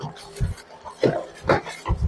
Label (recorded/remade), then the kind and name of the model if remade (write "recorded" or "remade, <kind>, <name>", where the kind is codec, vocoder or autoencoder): recorded